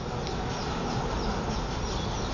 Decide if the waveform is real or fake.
real